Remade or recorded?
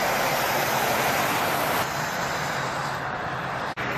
remade